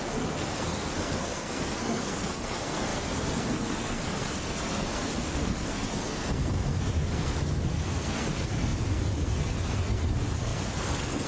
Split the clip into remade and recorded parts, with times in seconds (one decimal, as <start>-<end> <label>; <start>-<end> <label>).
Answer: 0.0-11.3 remade